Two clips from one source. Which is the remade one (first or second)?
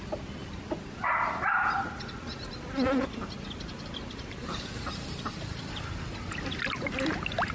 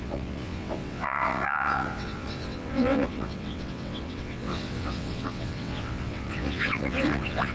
second